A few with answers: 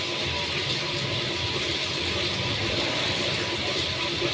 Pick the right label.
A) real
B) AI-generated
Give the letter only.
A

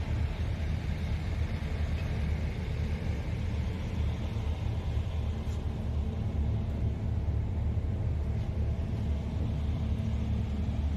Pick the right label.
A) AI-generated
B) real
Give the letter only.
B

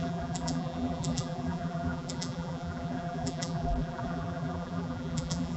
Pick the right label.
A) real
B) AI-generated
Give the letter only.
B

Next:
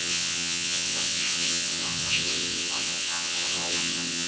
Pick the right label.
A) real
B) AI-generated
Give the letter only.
B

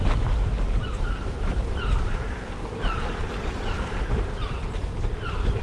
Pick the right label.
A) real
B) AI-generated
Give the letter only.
B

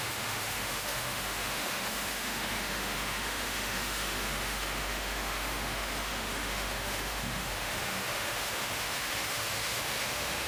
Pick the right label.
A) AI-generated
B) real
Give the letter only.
A